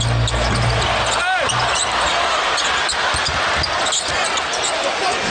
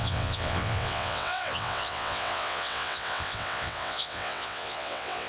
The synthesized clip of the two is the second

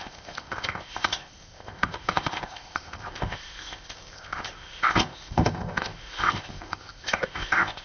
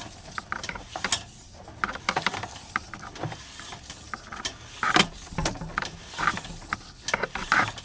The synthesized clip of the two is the first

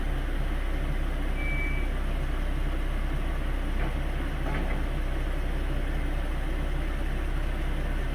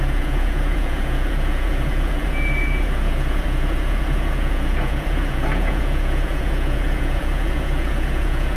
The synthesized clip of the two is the second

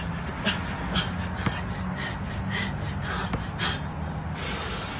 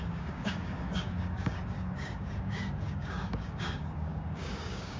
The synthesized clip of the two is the second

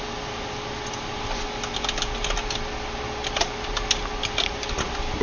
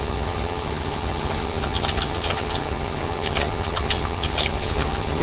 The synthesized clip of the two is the second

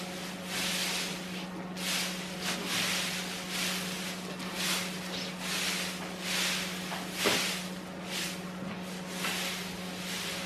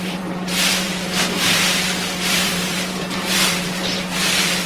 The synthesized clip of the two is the second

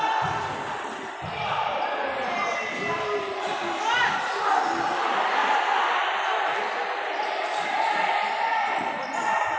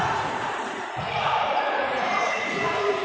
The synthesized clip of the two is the second